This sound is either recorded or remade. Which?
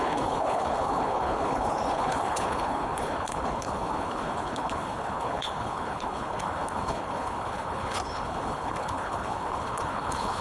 remade